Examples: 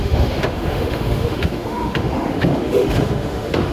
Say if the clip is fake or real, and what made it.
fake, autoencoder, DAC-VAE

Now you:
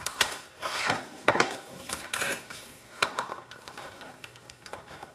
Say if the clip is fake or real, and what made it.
fake, codec, SNAC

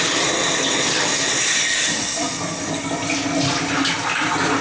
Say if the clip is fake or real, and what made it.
real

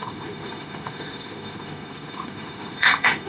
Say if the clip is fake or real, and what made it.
fake, autoencoder, DAC-VAE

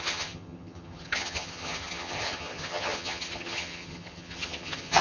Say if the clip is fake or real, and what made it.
fake, vocoder, HiFi-GAN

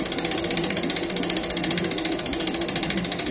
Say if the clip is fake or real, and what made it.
real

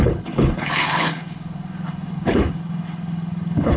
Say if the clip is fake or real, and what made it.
fake, codec, HILCodec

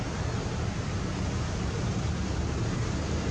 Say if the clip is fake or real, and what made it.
real